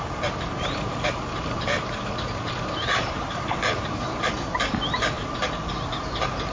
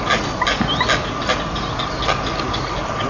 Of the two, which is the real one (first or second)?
second